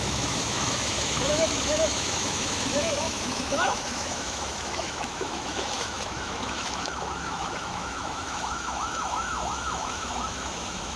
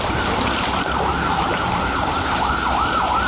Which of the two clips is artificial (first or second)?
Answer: first